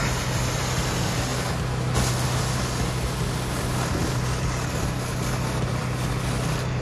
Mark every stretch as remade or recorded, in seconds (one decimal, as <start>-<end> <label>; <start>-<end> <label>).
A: 0.0-6.8 recorded